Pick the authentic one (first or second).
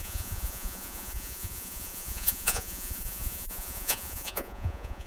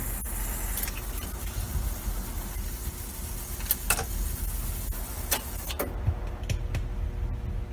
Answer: second